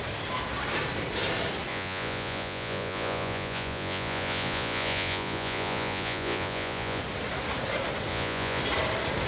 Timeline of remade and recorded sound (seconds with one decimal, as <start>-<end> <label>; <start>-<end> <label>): 0.0-1.7 recorded; 1.7-7.0 remade; 7.0-8.1 recorded; 8.1-8.6 remade; 8.6-9.3 recorded